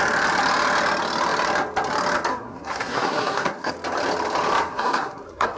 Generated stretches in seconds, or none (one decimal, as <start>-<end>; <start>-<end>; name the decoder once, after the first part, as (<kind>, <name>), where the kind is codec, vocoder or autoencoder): 2.3-3.7 (codec, SNAC); 4.7-5.6